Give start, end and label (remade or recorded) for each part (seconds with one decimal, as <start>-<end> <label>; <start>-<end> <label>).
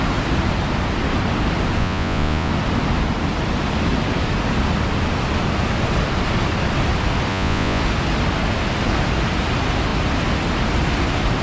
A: 0.0-1.8 recorded; 1.8-2.5 remade; 2.5-7.3 recorded; 7.3-7.8 remade; 7.8-11.4 recorded